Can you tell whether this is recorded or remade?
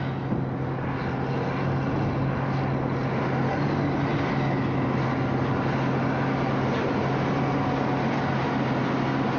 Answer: recorded